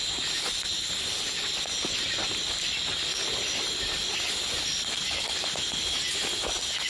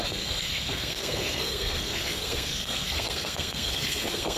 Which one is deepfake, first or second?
second